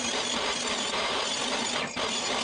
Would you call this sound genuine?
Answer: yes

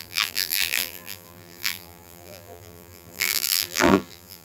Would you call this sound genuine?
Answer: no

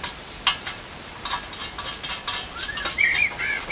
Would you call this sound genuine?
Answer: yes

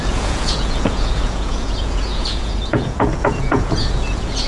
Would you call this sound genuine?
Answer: no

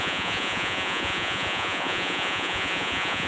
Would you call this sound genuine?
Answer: no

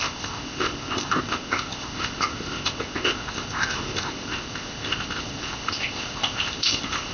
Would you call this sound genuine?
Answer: no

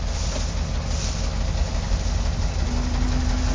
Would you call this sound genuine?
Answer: yes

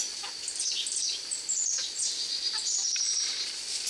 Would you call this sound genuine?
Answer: yes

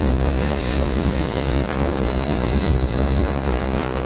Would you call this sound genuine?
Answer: no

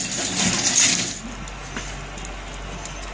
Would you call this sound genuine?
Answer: yes